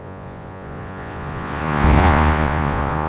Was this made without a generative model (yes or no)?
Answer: no